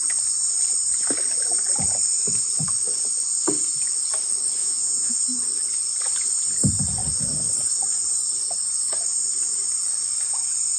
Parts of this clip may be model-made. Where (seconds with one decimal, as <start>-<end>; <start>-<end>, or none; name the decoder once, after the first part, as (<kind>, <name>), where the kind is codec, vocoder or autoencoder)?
4.6-5.1 (vocoder, Vocos)